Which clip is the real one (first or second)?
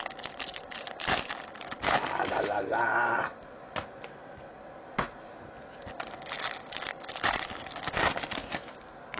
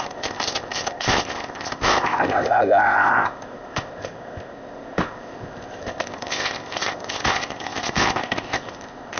first